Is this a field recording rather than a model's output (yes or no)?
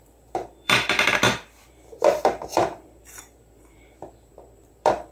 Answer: no